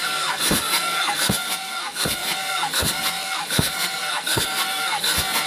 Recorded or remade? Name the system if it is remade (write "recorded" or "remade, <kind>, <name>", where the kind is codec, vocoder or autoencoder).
remade, codec, SNAC